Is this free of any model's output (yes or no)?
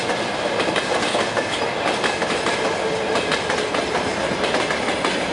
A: yes